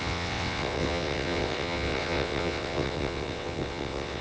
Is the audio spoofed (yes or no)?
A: yes